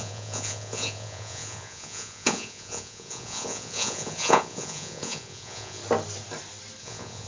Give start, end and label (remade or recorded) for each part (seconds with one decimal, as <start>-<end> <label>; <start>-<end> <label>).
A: 0.0-5.8 remade; 5.8-6.8 recorded; 6.8-7.3 remade